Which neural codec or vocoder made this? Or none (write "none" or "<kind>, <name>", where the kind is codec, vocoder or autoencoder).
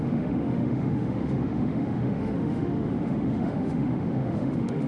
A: autoencoder, DAC-VAE